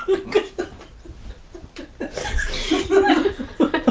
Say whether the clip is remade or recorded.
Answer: recorded